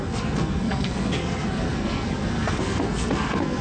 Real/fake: fake